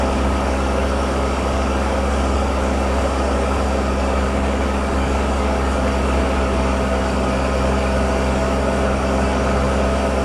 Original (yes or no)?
no